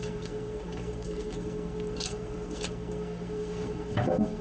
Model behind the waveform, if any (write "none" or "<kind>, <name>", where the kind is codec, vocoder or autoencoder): codec, SNAC